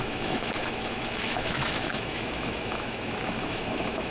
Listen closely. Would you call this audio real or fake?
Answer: fake